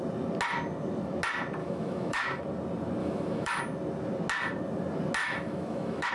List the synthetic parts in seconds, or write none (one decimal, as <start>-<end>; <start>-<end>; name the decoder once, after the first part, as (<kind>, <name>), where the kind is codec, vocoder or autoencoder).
1.6-2.4 (autoencoder, DAC-VAE); 3.0-3.6; 5.2-6.1